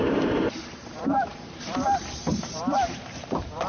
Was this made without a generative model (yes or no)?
no